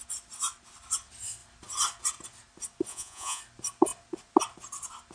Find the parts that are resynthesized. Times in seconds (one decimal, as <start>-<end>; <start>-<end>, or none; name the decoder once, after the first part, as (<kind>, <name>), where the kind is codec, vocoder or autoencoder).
2.9-3.4 (vocoder, Vocos)